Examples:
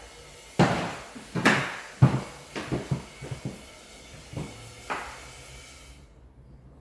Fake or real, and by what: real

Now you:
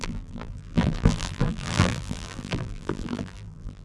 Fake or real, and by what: fake, vocoder, BigVGAN v2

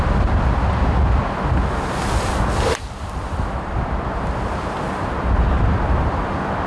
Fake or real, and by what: real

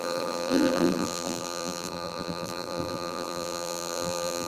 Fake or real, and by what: fake, vocoder, BigVGAN v2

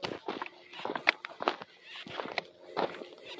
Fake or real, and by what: real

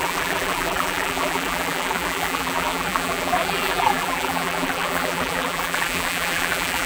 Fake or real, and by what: fake, vocoder, BigVGAN v2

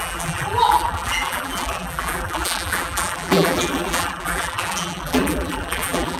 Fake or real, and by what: fake, vocoder, BigVGAN v2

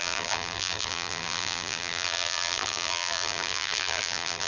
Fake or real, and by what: fake, vocoder, BigVGAN v2